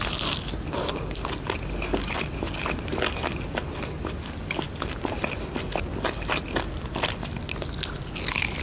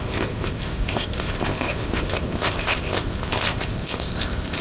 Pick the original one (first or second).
first